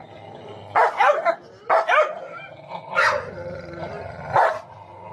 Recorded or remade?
recorded